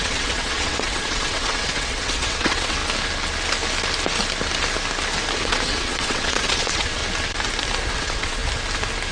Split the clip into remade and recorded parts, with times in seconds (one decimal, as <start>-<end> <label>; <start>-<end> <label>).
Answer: 0.0-2.8 remade; 2.8-5.4 recorded; 5.4-7.0 remade; 7.0-7.9 recorded; 7.9-8.4 remade; 8.4-9.1 recorded

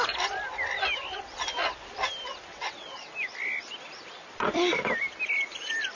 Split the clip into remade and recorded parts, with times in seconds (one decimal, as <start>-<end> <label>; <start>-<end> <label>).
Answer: 0.0-2.5 recorded; 2.5-3.1 remade; 3.1-6.0 recorded

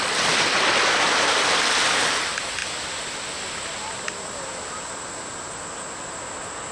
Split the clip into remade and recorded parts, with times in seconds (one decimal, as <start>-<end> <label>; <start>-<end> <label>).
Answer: 0.0-6.7 recorded